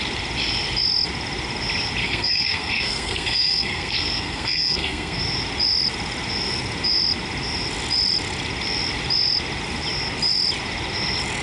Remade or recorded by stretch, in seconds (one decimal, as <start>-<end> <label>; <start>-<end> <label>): 0.0-2.0 recorded; 2.0-5.2 remade; 5.2-11.4 recorded